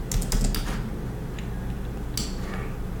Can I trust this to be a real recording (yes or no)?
yes